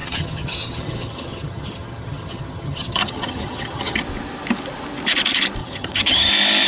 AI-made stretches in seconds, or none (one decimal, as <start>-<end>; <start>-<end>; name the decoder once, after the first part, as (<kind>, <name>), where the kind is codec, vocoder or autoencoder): 0.0-4.0 (vocoder, HiFi-GAN); 5.6-6.3